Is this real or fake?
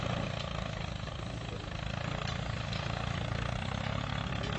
real